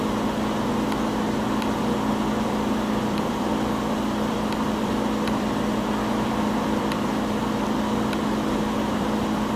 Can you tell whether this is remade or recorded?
remade